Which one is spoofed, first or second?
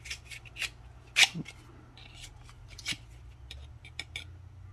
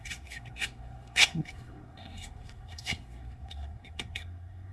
second